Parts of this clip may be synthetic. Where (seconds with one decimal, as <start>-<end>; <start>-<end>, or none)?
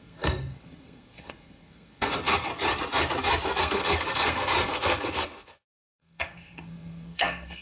0.0-2.5; 3.6-7.6